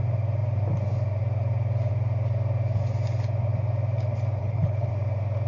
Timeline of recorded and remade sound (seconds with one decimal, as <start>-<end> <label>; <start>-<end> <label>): 0.0-4.4 recorded; 4.4-4.9 remade; 4.9-5.5 recorded